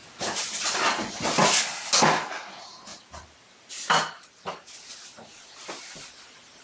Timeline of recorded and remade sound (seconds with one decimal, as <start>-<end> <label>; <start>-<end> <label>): 0.0-2.9 recorded; 2.9-4.4 remade; 4.4-6.6 recorded